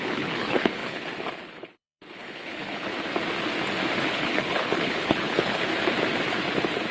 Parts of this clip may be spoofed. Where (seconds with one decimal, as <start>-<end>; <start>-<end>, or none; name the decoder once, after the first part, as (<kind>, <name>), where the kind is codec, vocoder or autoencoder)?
0.0-2.9 (codec, HILCodec); 4.0-5.7